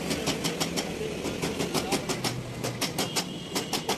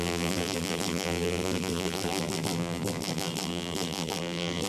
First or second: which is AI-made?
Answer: second